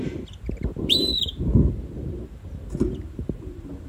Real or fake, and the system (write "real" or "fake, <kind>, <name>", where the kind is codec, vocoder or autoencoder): fake, vocoder, BigVGAN v2